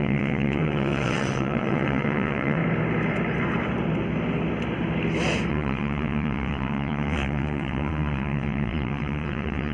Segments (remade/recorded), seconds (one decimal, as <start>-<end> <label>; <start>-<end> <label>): 0.0-2.6 remade; 2.6-5.5 recorded; 5.5-9.7 remade